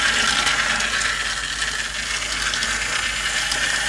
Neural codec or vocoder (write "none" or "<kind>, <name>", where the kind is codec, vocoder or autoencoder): none